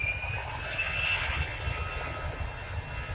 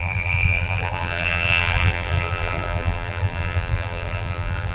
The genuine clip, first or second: first